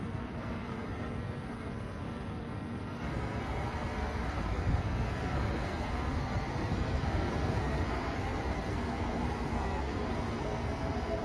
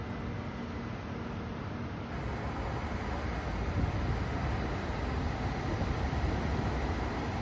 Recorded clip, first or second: second